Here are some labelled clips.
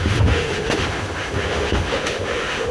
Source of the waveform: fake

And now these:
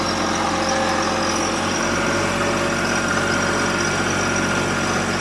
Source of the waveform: real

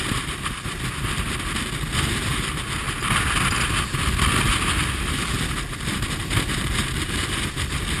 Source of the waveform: real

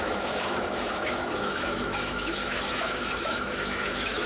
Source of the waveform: fake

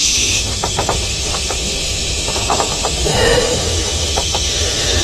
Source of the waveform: fake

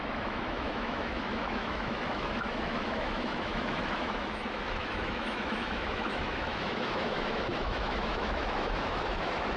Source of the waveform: fake